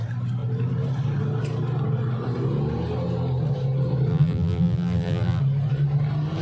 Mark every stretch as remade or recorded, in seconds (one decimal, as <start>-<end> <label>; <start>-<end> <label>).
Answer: 0.0-4.1 recorded; 4.1-5.4 remade; 5.4-6.4 recorded